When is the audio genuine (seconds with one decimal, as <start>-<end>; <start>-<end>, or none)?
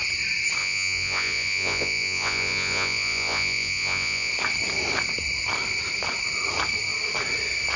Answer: 0.0-0.6; 4.3-7.8